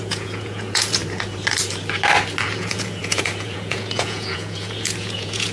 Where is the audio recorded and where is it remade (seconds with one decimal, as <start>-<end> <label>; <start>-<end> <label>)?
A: 0.0-1.0 remade; 1.0-2.5 recorded; 2.5-5.5 remade